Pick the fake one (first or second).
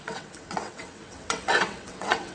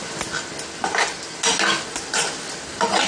first